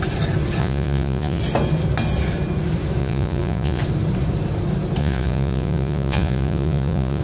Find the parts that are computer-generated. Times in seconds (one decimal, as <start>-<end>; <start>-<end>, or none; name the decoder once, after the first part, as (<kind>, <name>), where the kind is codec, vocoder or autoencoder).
0.6-1.4 (vocoder, Vocos); 3.0-3.8; 5.0-7.2